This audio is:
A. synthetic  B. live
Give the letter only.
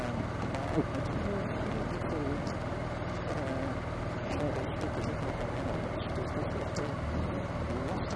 B